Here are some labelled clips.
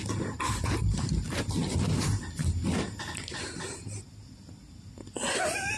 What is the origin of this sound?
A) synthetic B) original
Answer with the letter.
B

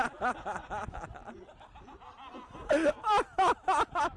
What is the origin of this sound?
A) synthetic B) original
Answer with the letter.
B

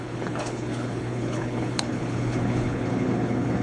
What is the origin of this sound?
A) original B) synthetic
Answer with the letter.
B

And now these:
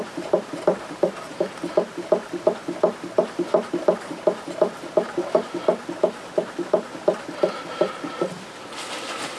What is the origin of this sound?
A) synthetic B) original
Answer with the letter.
B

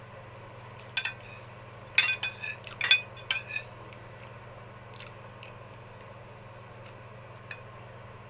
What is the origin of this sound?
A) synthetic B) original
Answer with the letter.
B